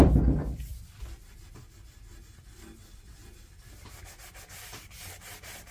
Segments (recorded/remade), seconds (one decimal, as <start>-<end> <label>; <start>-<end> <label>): 0.0-5.7 recorded